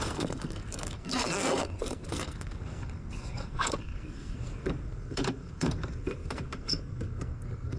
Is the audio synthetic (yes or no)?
yes